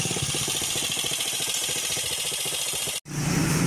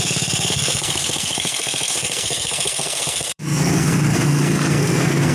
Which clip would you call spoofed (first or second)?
second